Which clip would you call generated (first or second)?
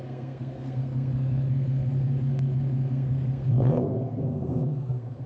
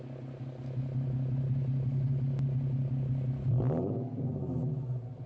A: first